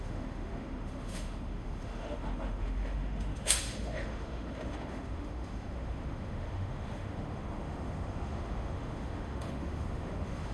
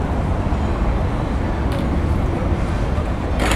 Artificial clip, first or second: first